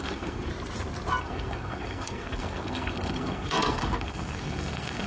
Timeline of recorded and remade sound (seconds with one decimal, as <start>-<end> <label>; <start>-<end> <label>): 0.0-0.5 remade; 0.5-1.2 recorded; 1.2-5.1 remade